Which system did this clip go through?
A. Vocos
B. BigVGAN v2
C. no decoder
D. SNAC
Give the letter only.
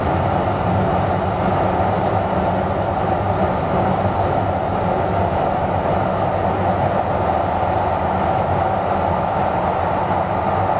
C